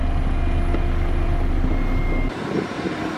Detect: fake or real real